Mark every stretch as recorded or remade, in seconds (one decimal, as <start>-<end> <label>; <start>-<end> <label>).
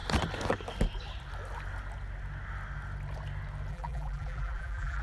0.0-3.7 recorded; 3.7-5.0 remade